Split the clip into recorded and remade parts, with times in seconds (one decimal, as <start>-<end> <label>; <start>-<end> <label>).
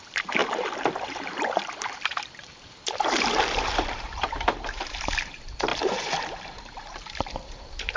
0.0-8.0 remade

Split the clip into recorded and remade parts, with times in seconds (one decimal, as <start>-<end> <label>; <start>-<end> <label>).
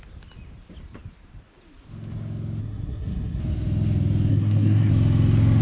0.0-2.6 recorded; 2.6-3.4 remade; 3.4-4.3 recorded; 4.3-4.9 remade; 4.9-5.6 recorded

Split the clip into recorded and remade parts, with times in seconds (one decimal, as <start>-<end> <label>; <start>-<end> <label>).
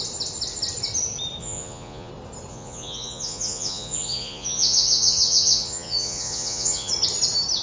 0.0-1.4 recorded; 1.4-2.1 remade; 2.1-2.5 recorded; 2.5-6.9 remade; 6.9-7.6 recorded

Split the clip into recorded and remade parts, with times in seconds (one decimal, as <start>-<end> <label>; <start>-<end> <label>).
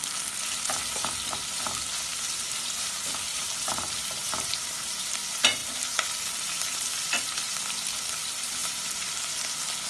0.0-2.1 recorded; 2.1-2.9 remade; 2.9-3.3 recorded; 3.3-5.1 remade; 5.1-5.6 recorded; 5.6-6.3 remade; 6.3-8.6 recorded; 8.6-9.1 remade; 9.1-9.9 recorded